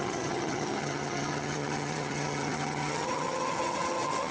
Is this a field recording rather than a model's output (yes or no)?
no